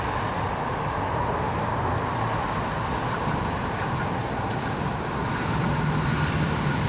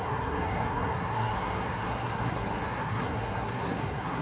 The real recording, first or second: first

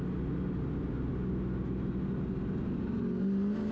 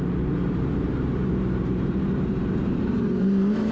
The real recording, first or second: first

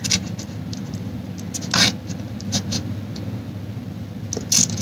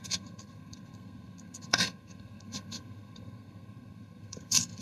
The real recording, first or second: first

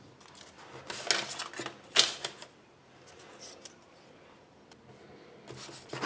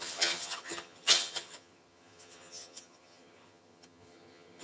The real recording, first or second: first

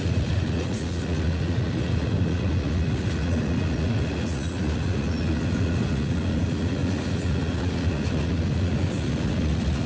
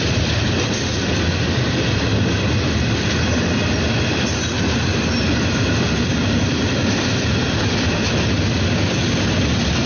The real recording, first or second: second